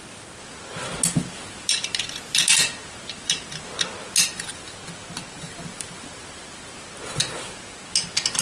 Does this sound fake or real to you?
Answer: real